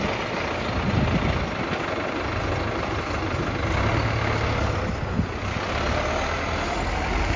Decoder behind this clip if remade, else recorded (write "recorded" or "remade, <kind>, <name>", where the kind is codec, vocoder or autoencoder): recorded